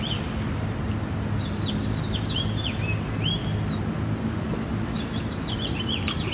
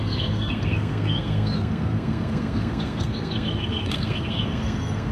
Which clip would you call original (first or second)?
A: first